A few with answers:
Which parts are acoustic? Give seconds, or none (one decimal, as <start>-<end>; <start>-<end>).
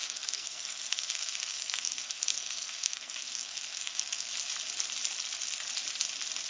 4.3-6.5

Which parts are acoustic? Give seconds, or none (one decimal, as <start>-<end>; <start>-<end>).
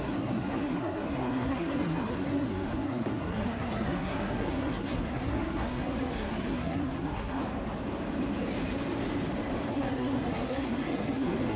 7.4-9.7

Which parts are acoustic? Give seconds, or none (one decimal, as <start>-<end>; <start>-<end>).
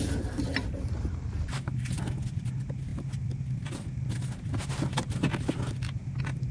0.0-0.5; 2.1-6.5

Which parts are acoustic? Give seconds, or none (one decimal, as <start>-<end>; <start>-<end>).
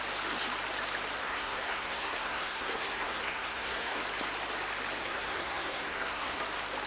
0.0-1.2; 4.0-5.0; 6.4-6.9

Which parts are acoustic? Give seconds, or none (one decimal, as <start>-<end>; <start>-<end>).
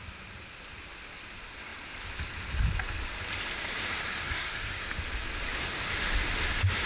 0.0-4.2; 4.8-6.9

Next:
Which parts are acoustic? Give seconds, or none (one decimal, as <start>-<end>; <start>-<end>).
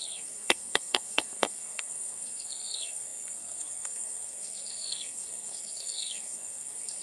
none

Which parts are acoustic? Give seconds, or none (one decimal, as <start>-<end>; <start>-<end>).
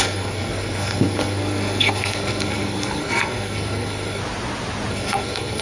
4.2-4.9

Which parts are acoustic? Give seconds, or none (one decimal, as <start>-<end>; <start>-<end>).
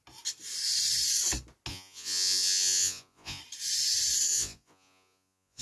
0.0-1.7; 3.4-4.3